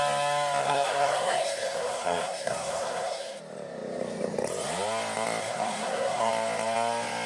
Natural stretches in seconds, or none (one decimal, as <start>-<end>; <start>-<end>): 0.0-0.6; 3.4-5.4; 6.3-7.3